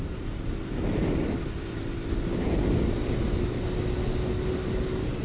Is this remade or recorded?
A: recorded